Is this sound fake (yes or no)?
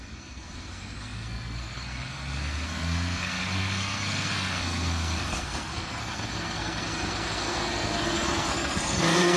yes